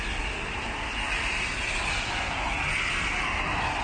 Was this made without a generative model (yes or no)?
yes